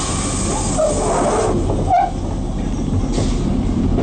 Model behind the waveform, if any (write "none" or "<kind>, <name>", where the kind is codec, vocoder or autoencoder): none